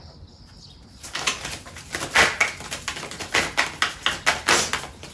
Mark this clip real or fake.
real